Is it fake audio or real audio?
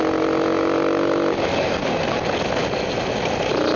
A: real